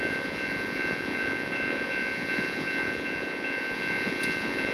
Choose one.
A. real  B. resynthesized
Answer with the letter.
B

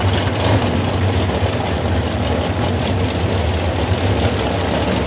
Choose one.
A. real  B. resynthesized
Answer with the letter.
A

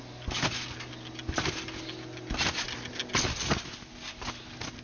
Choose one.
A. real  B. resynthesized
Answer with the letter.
A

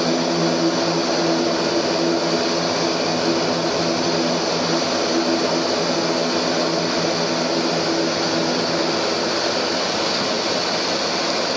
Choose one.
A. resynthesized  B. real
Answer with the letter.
B